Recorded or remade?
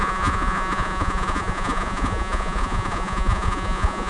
remade